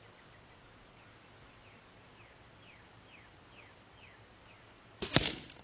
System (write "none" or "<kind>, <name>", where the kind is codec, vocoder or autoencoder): none